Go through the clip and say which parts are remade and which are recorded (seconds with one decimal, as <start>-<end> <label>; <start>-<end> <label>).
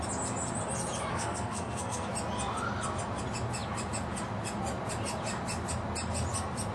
0.0-1.1 recorded; 1.1-2.1 remade; 2.1-6.7 recorded